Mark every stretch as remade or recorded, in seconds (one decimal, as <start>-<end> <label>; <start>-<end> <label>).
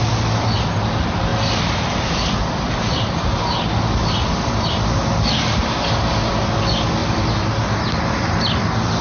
0.0-9.0 recorded